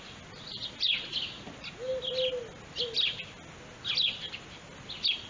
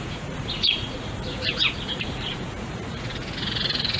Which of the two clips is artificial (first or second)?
second